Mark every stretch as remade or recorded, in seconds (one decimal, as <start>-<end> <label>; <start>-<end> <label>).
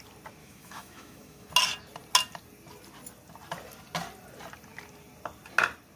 0.0-0.4 recorded; 0.4-1.5 remade; 1.5-6.0 recorded